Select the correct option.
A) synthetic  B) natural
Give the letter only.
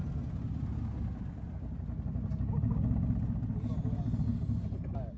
B